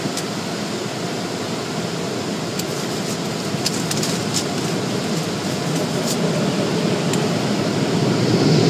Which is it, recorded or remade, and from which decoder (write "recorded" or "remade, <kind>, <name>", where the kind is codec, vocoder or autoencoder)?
recorded